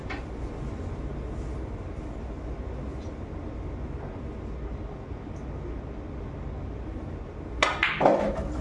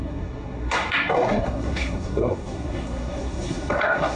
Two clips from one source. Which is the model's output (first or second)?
second